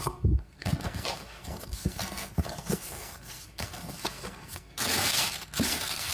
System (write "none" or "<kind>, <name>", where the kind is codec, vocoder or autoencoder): codec, SNAC